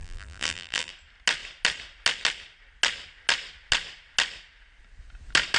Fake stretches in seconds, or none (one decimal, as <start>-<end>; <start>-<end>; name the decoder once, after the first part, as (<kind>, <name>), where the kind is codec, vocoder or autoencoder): 0.0-0.9 (vocoder, BigVGAN v2)